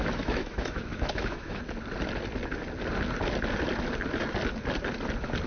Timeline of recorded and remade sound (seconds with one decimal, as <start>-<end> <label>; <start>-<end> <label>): 0.0-1.6 remade; 1.6-5.5 recorded